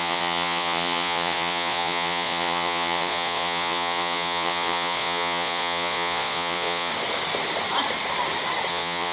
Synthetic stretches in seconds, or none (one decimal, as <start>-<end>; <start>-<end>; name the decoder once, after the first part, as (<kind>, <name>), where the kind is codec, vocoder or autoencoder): 0.0-6.9 (vocoder, Vocos); 8.7-9.1